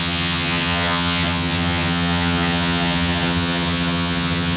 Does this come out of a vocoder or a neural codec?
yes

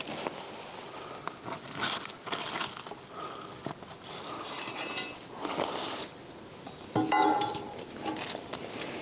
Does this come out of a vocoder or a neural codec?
no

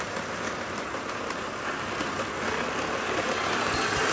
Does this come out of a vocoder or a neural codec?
no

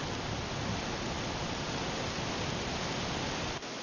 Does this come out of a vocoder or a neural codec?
no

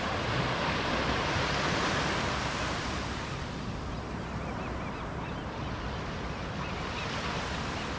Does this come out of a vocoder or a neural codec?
no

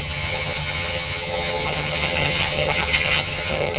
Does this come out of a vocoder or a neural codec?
yes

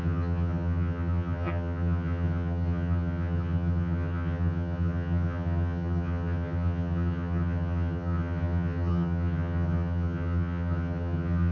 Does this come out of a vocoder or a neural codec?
yes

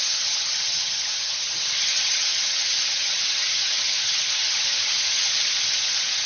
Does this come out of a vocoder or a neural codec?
yes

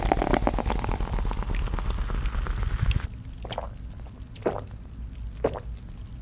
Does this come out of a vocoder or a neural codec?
no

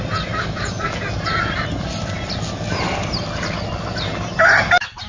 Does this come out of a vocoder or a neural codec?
no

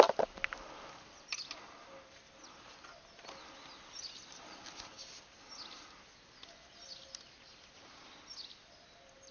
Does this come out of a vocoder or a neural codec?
no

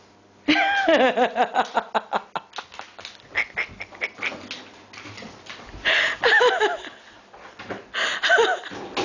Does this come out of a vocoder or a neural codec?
no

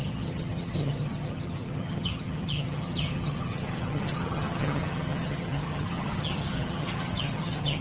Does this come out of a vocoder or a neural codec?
yes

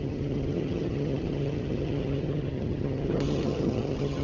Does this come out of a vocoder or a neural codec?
yes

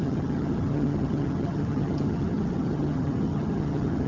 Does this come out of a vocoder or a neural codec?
yes